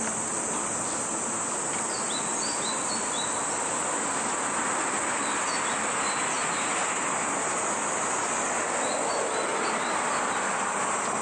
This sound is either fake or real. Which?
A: real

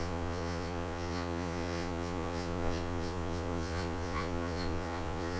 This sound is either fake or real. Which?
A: fake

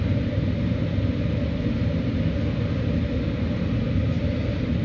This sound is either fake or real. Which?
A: real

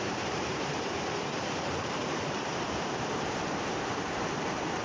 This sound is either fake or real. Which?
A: fake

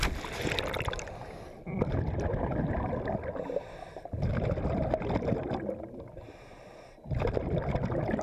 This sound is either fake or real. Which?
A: real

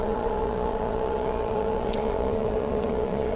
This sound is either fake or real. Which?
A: fake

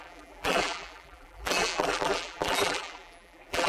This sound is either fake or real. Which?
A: fake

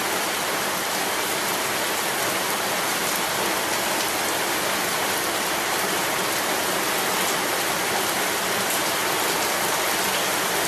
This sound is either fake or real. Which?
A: real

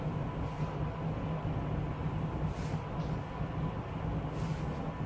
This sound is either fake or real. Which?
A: real